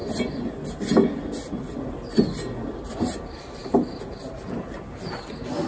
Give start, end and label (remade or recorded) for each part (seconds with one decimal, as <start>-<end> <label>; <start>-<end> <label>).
0.0-5.7 recorded